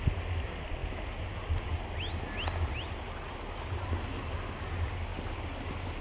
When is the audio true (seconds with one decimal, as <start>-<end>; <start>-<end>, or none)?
0.0-6.0